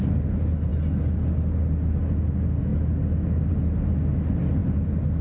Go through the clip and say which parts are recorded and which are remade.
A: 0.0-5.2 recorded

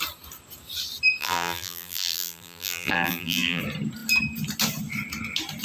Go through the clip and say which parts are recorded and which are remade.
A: 0.0-1.2 recorded; 1.2-3.6 remade; 3.6-5.6 recorded